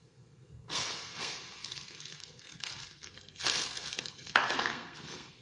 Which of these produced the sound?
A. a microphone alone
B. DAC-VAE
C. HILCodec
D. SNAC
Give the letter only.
D